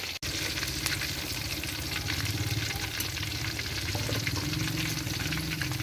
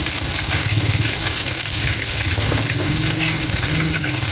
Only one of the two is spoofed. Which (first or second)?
second